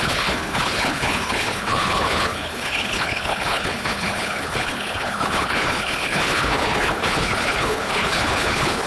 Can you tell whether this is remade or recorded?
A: remade